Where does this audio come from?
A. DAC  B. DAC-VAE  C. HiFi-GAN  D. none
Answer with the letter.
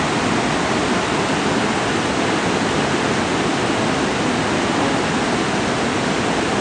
D